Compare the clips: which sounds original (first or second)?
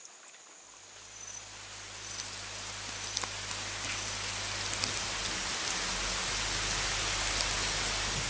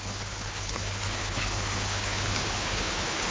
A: first